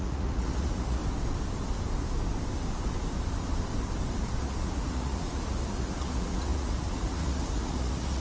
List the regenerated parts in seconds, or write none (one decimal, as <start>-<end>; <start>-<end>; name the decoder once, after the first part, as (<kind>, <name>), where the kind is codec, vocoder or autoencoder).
0.0-1.0 (vocoder, Vocos); 4.4-8.2